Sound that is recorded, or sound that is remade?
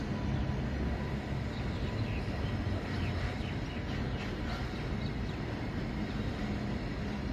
recorded